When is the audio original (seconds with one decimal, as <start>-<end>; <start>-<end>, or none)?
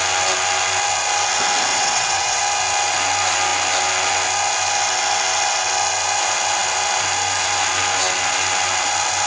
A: 0.0-1.7; 2.4-9.3